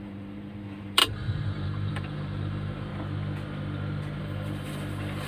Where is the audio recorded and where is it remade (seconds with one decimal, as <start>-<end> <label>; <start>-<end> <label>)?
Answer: 0.0-2.9 remade; 2.9-4.2 recorded; 4.2-5.3 remade